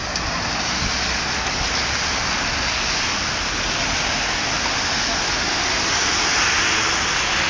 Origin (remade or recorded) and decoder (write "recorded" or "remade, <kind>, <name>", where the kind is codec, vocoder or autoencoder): recorded